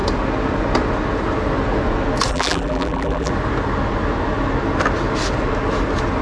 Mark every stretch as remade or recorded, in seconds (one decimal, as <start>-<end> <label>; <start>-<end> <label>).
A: 0.0-2.3 recorded; 2.3-3.3 remade; 3.3-6.2 recorded